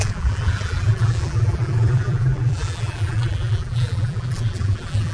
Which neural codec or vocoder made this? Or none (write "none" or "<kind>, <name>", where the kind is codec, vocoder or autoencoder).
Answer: vocoder, BigVGAN v2